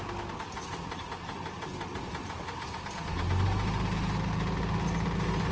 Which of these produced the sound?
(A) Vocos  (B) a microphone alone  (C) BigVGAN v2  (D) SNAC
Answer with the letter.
B